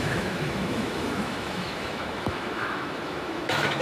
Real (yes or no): no